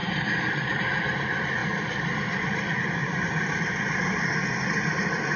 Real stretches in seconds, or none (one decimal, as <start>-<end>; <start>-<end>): 0.8-1.6; 2.6-3.0; 3.8-5.4